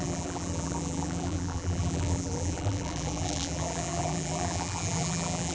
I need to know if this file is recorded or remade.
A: remade